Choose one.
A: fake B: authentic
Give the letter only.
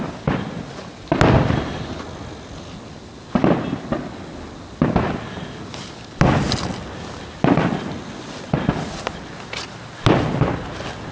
B